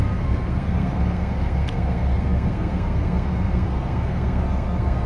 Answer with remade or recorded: remade